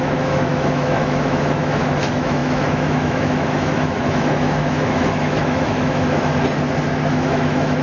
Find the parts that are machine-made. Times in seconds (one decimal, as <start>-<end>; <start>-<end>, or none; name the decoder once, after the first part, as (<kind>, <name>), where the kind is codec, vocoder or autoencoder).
0.0-6.3 (autoencoder, DAC-VAE); 7.1-7.8